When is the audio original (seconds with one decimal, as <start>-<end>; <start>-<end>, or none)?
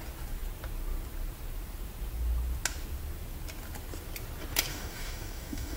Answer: 0.0-4.7